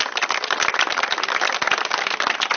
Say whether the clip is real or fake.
real